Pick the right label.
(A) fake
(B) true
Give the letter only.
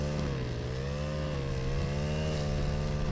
B